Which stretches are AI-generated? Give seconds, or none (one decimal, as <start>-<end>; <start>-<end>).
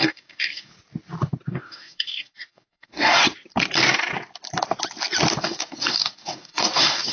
0.0-0.7; 1.5-3.2; 5.4-7.1